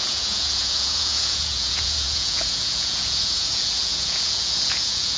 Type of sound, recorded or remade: remade